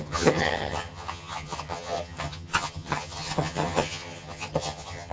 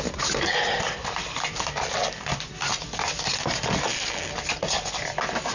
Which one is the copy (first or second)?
first